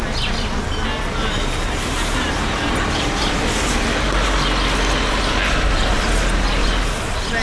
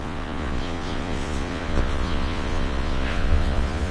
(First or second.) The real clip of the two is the first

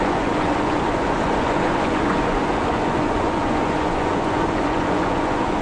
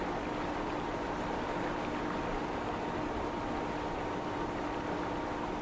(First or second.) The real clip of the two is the second